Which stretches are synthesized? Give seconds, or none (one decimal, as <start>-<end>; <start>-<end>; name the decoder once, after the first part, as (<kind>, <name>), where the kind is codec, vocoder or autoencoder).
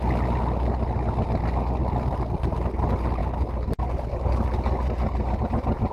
none